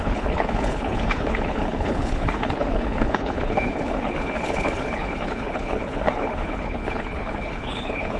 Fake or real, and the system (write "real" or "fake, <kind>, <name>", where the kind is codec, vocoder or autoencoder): fake, codec, HILCodec